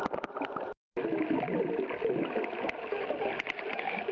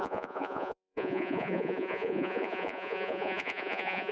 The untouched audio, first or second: first